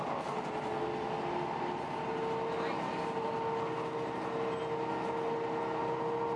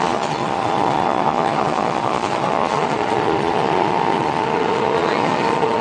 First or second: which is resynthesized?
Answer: second